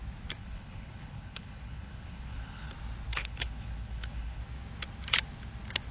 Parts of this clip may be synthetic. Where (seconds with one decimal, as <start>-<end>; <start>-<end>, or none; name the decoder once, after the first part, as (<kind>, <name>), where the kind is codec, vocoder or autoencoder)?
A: 0.4-2.7 (codec, HILCodec); 3.1-4.4